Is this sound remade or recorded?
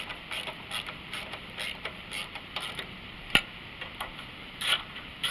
remade